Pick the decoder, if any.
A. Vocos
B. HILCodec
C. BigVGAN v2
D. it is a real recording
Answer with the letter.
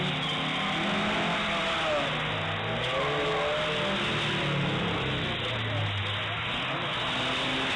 D